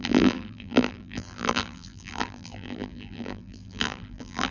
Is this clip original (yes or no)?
no